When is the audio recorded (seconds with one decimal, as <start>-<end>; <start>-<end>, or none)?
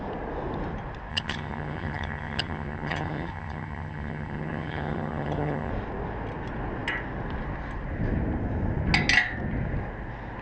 0.0-1.1; 5.7-10.4